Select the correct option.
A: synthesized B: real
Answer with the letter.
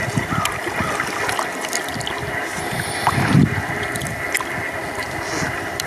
B